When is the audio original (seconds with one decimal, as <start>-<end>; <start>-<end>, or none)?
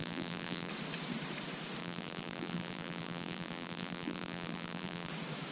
0.7-1.8; 5.1-5.5